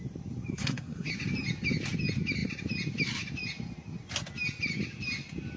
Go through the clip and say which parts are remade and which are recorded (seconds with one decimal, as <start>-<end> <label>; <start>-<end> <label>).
0.0-0.5 recorded; 0.5-1.1 remade; 1.1-5.6 recorded